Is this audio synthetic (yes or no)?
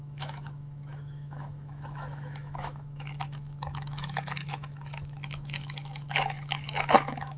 yes